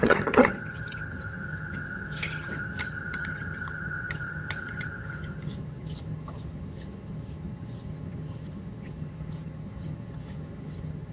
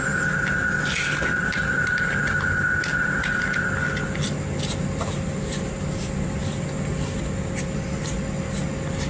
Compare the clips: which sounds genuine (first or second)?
second